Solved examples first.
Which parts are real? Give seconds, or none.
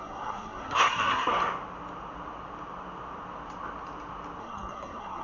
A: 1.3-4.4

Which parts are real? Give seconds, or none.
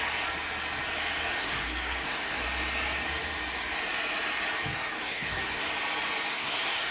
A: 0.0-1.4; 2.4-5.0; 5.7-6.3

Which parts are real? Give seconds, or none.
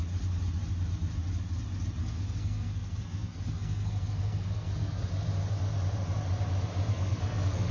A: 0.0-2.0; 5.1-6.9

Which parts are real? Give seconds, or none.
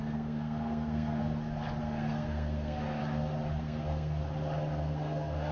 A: 1.2-1.8; 3.0-3.6; 4.2-4.8